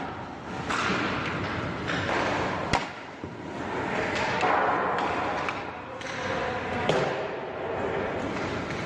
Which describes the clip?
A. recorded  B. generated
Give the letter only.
A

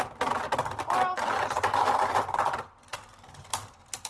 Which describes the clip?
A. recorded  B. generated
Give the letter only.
B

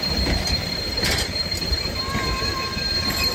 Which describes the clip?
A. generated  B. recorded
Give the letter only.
A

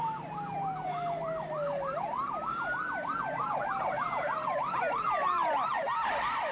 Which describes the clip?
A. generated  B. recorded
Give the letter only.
A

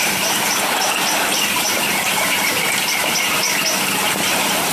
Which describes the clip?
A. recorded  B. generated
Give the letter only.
B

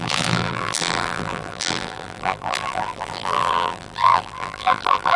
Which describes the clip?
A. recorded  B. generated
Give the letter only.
B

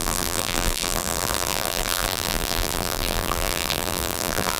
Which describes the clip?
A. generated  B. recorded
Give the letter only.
A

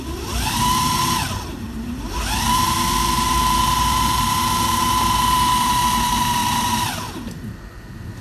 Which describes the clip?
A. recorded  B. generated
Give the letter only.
B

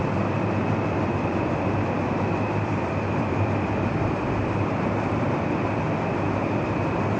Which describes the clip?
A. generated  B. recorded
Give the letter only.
A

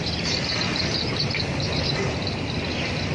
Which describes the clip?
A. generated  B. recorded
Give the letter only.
A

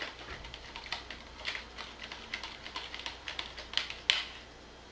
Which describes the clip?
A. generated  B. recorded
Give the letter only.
B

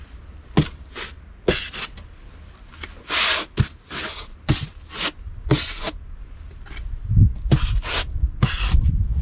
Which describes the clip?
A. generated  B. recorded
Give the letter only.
B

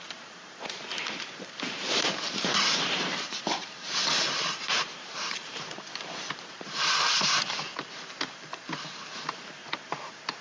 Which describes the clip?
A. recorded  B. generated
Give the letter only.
B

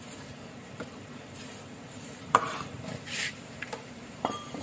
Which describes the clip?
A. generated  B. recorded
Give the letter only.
A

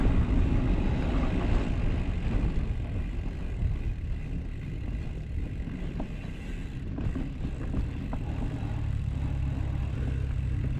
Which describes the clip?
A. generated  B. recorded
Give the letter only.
B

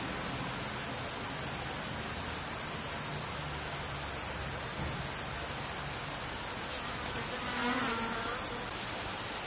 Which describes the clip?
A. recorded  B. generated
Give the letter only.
A